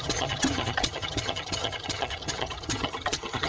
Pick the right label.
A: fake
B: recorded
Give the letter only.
A